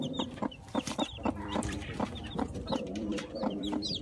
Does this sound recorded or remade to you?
remade